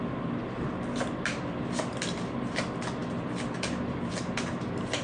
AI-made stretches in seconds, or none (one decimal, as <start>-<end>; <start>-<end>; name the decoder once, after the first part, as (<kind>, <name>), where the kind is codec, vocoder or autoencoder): none